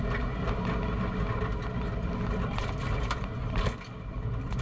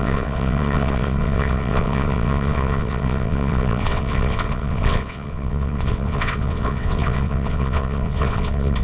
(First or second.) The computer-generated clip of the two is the second